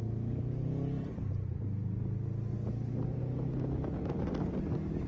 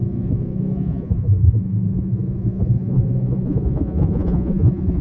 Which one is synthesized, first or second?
second